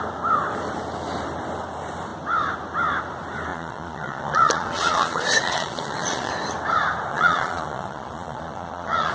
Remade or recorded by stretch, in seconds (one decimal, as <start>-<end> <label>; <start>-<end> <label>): 0.0-3.5 recorded; 3.5-6.3 remade; 6.3-7.1 recorded; 7.1-9.1 remade